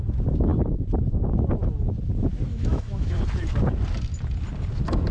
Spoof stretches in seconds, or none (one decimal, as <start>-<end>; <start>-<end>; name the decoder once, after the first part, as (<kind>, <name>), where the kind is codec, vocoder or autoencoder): 2.5-3.2 (autoencoder, DAC-VAE)